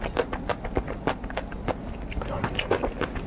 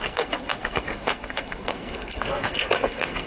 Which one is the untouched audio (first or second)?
first